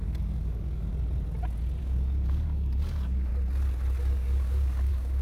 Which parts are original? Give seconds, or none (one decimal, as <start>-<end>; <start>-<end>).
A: 0.9-1.8; 3.3-4.0